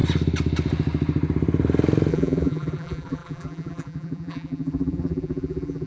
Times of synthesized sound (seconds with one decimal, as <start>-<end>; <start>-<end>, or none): 2.1-5.9